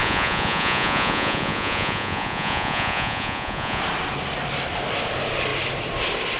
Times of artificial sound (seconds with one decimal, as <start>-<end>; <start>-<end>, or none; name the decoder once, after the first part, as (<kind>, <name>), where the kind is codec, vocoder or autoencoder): 0.0-3.8 (vocoder, Vocos)